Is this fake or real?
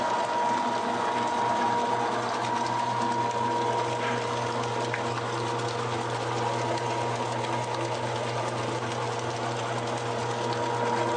real